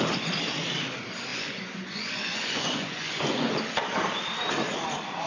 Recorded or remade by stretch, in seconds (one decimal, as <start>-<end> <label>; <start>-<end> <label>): 0.0-1.3 recorded; 1.3-3.5 remade; 3.5-5.3 recorded